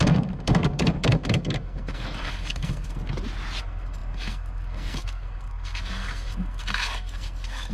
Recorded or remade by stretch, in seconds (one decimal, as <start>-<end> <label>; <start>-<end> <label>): 0.0-3.0 remade; 3.0-3.6 recorded; 3.6-7.7 remade